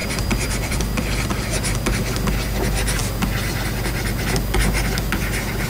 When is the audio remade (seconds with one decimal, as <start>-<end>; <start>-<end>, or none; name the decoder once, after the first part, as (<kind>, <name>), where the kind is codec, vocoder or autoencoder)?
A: 0.0-1.5 (vocoder, BigVGAN v2)